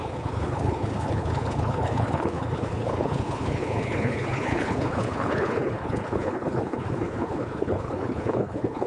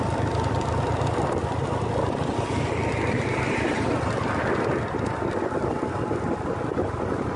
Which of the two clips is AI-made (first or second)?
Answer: first